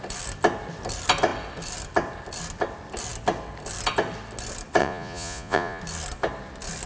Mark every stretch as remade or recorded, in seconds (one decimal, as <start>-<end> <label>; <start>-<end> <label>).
0.0-4.8 recorded; 4.8-5.8 remade; 5.8-6.9 recorded